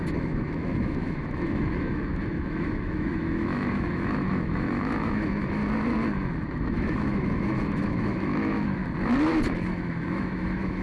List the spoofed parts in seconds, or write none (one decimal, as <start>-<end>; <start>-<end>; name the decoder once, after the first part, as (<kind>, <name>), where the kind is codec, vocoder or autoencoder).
0.0-5.6 (autoencoder, DAC-VAE); 6.6-8.8; 9.7-10.8